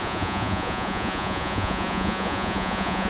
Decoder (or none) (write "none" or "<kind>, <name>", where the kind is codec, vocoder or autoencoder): vocoder, Vocos